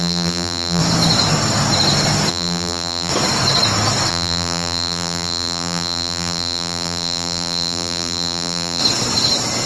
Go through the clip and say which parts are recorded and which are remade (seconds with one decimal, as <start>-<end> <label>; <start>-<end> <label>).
0.0-0.8 remade; 0.8-2.3 recorded; 2.3-3.1 remade; 3.1-4.1 recorded; 4.1-8.8 remade; 8.8-9.7 recorded